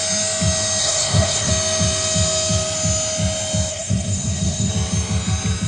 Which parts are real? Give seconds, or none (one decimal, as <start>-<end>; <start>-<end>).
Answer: 0.0-0.8; 1.5-3.7; 4.7-5.7